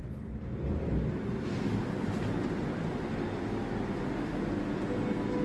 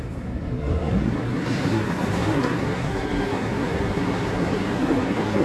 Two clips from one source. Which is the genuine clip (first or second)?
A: first